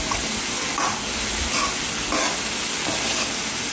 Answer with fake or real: real